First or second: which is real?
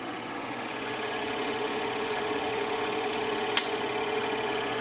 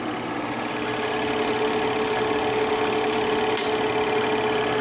second